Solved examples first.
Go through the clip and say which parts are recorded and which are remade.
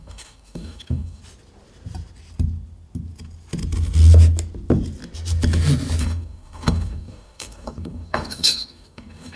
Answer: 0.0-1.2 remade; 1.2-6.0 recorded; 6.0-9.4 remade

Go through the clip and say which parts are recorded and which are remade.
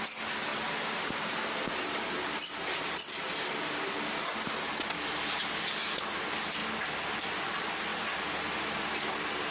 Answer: 0.0-0.5 recorded; 0.5-1.3 remade; 1.3-7.9 recorded; 7.9-8.6 remade; 8.6-9.5 recorded